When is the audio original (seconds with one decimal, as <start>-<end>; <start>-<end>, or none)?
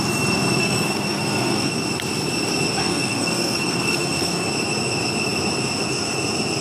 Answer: 0.0-0.6; 1.7-2.8; 4.5-6.6